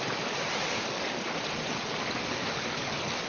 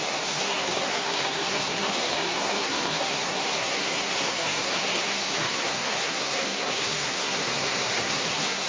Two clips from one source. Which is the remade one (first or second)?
second